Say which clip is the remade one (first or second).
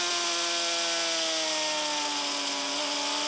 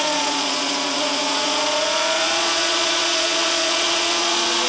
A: second